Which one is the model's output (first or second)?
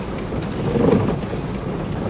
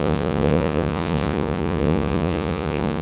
second